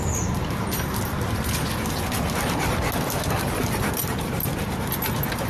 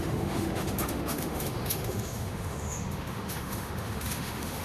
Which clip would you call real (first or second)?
first